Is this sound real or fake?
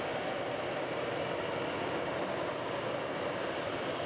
real